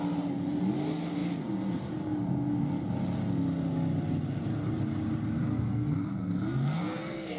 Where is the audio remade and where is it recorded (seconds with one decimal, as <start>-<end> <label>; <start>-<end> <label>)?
0.0-5.4 recorded; 5.4-7.4 remade